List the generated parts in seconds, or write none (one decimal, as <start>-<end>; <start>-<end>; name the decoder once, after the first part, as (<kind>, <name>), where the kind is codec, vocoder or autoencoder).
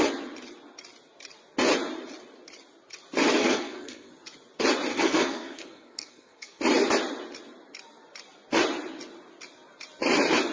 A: 3.4-4.1 (codec, SNAC); 4.9-6.6